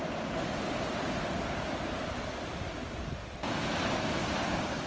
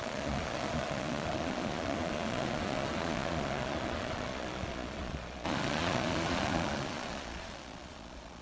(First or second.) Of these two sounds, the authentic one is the first